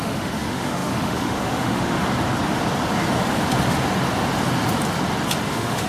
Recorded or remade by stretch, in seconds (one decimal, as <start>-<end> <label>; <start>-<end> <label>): 0.0-2.0 remade; 2.0-5.5 recorded; 5.5-5.9 remade